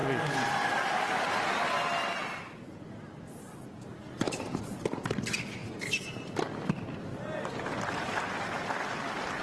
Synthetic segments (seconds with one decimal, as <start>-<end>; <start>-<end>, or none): none